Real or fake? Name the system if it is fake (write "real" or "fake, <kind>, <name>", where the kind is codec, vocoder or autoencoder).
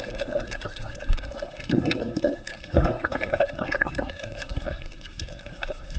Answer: fake, codec, SNAC